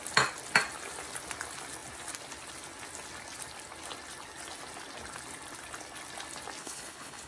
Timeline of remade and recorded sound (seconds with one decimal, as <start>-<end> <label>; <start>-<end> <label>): 0.0-6.6 recorded; 6.6-7.3 remade